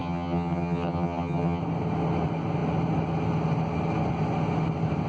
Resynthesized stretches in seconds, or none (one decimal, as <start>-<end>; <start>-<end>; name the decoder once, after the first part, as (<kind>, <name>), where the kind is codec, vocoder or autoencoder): 0.0-1.6 (vocoder, HiFi-GAN)